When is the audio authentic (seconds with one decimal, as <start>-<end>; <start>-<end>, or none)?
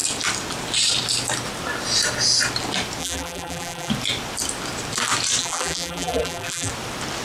0.0-3.0; 3.9-5.4; 6.7-7.2